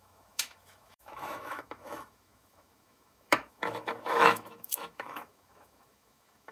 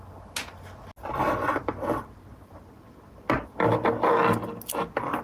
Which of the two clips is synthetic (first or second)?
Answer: first